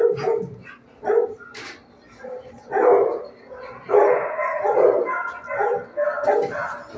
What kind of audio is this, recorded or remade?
recorded